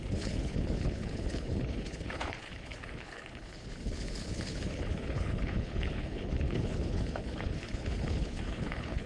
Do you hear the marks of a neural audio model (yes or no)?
yes